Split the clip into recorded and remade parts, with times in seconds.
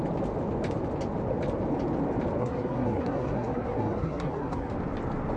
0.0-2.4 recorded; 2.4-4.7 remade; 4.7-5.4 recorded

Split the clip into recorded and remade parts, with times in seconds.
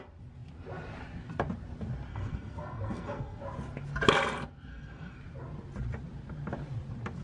0.0-2.1 recorded; 2.1-3.4 remade; 3.4-4.7 recorded; 4.7-5.2 remade; 5.2-7.2 recorded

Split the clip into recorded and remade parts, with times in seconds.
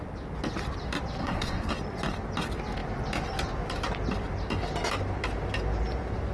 0.0-1.2 recorded; 1.2-1.7 remade; 1.7-6.3 recorded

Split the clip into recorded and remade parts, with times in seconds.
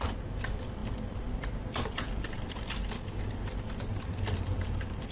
0.0-5.1 recorded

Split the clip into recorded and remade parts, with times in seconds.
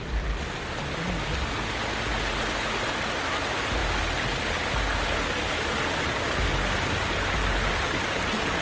0.0-8.6 recorded